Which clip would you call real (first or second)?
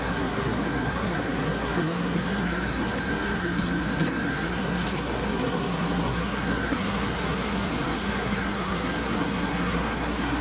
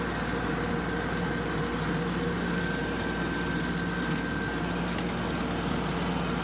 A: second